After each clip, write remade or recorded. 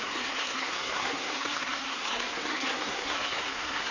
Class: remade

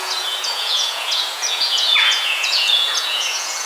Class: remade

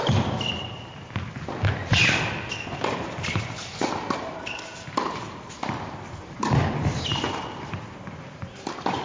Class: recorded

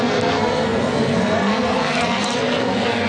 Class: remade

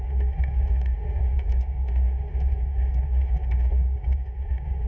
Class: remade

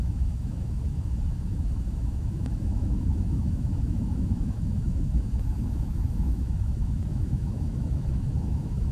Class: remade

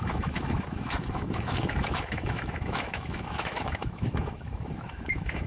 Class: remade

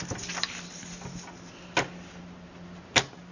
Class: recorded